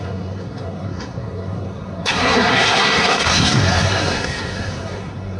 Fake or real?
fake